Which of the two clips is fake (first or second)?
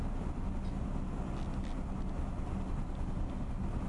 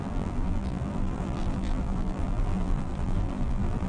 second